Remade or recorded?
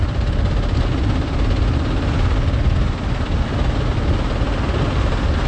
recorded